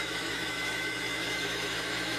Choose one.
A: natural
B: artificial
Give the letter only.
B